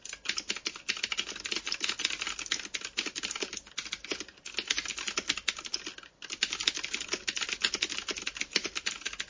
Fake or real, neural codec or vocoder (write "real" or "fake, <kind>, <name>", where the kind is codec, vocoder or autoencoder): real